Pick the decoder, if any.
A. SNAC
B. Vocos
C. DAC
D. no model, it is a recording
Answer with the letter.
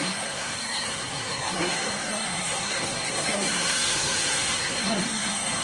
A